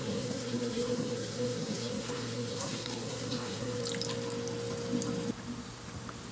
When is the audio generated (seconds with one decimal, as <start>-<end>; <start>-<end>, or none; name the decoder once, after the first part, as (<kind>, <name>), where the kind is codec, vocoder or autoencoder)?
0.0-3.8 (codec, SNAC)